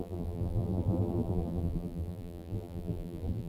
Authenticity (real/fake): fake